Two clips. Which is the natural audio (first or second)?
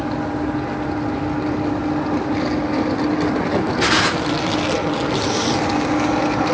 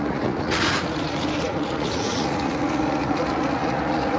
first